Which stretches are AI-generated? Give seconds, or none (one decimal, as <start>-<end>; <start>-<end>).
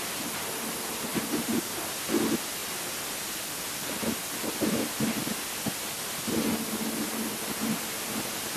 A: 1.1-1.8